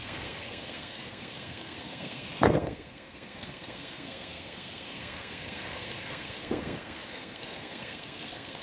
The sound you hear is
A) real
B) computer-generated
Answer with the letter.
B